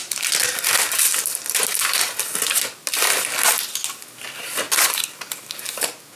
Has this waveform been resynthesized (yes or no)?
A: no